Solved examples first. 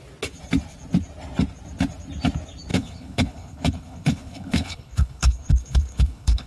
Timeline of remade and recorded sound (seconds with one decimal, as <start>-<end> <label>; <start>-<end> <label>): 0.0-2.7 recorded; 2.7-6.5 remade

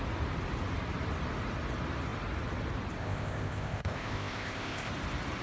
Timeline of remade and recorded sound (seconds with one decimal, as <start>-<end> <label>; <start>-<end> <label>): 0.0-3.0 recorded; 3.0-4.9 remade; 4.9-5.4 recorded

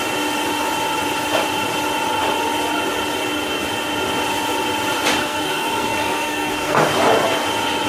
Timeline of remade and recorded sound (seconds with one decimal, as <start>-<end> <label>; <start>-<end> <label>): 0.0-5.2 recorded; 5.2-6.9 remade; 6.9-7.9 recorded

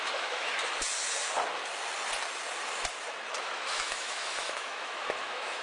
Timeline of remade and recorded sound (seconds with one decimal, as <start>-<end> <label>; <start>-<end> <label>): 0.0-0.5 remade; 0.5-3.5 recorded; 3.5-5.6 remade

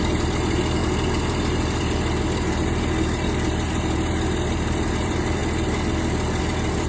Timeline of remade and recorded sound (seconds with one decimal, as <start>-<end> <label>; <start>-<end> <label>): 0.0-5.4 remade; 5.4-6.4 recorded; 6.4-6.9 remade

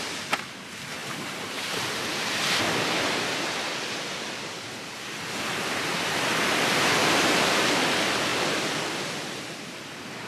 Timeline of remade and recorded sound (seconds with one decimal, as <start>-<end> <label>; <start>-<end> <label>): 0.0-1.0 recorded; 1.0-2.4 remade; 2.4-10.3 recorded

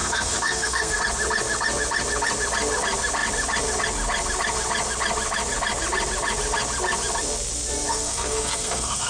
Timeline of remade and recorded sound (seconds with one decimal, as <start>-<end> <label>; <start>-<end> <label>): 0.0-1.0 remade; 1.0-7.9 recorded; 7.9-9.1 remade